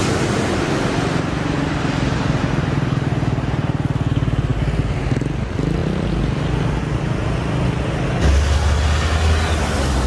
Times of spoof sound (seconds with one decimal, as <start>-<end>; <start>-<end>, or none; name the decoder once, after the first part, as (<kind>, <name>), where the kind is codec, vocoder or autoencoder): none